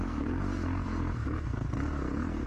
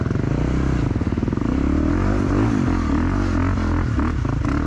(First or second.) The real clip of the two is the second